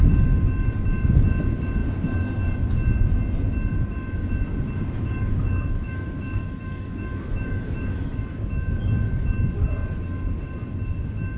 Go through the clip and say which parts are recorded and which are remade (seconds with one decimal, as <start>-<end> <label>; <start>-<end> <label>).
0.0-5.2 recorded; 5.2-8.2 remade; 8.2-11.4 recorded